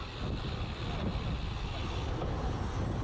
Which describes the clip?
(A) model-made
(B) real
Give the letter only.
B